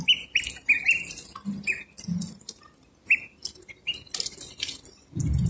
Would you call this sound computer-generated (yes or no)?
no